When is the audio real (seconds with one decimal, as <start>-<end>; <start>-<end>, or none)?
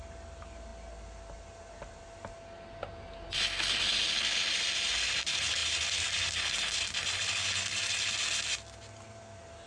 0.0-9.7